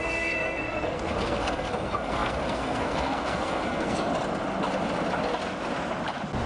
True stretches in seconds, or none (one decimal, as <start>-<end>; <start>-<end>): 4.1-6.5